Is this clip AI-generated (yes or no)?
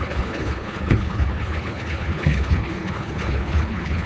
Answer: yes